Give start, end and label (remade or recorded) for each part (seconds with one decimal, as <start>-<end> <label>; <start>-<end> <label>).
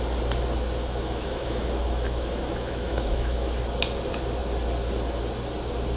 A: 0.0-0.8 recorded; 0.8-3.6 remade; 3.6-6.0 recorded